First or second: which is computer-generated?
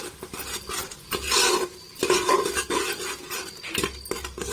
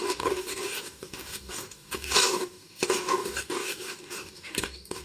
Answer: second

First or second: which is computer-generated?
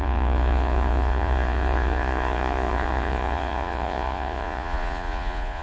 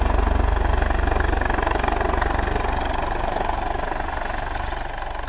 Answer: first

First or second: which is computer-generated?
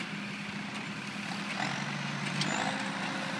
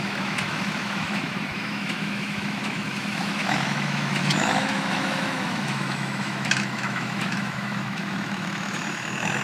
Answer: second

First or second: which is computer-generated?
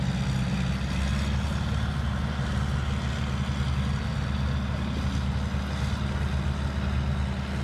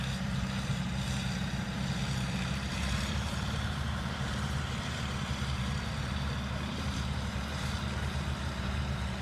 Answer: second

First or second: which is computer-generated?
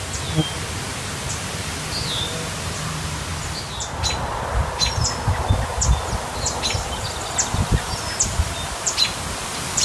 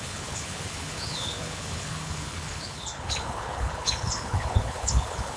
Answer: second